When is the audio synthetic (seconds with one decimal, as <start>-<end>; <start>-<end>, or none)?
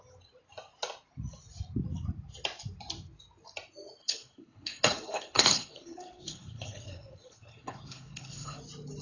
4.0-8.6